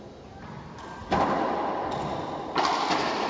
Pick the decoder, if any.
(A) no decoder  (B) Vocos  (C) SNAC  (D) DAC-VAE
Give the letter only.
A